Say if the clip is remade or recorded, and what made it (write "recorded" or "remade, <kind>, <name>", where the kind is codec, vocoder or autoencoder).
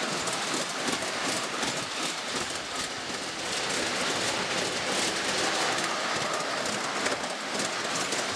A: recorded